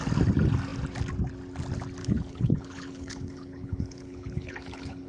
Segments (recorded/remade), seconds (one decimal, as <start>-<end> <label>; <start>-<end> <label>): 0.0-2.0 recorded; 2.0-5.1 remade